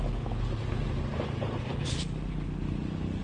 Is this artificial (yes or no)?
no